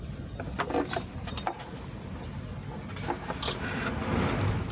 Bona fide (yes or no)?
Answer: yes